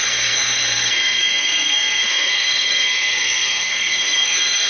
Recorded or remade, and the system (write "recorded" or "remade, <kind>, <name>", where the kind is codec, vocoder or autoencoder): remade, codec, SNAC